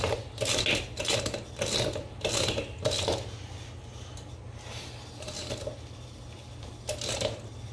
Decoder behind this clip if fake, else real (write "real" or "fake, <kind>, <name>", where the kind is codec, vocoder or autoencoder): real